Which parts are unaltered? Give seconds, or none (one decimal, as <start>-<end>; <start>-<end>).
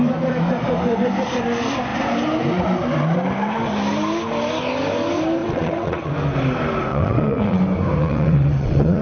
0.0-5.4; 6.1-6.9; 7.6-8.0